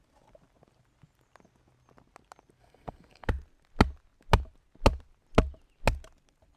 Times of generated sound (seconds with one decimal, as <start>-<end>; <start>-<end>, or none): 2.6-3.3